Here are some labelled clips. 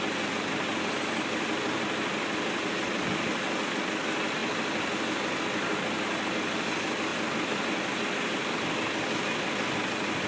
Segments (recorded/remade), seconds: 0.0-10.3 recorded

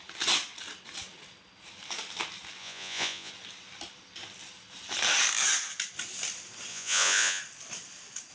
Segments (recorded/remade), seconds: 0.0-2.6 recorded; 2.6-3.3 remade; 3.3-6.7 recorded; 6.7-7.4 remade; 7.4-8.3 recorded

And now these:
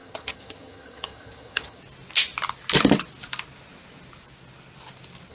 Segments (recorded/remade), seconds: 0.0-1.8 remade; 1.8-5.3 recorded

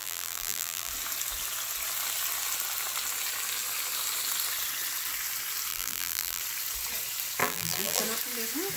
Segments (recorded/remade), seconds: 0.0-0.9 remade; 0.9-5.7 recorded; 5.7-6.4 remade; 6.4-7.4 recorded; 7.4-8.0 remade; 8.0-8.8 recorded

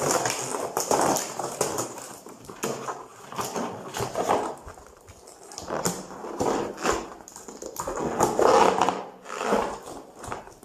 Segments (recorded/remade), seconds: 0.0-0.5 recorded; 0.5-2.5 remade; 2.5-10.6 recorded

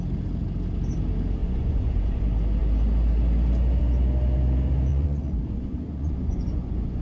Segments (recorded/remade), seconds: 0.0-1.4 recorded; 1.4-2.2 remade; 2.2-4.9 recorded; 4.9-7.0 remade

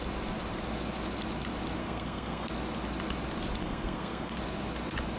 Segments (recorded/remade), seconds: 0.0-1.8 recorded; 1.8-2.5 remade; 2.5-3.6 recorded; 3.6-4.4 remade; 4.4-5.2 recorded